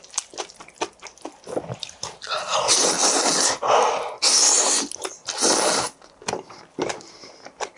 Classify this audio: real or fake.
real